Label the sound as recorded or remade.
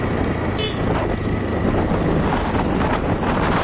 recorded